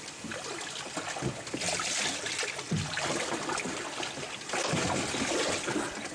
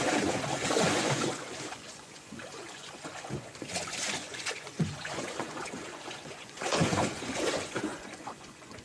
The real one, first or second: first